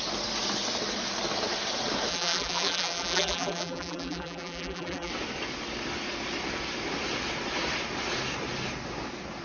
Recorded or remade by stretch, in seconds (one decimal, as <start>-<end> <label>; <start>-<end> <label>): 0.0-2.1 recorded; 2.1-5.1 remade; 5.1-9.4 recorded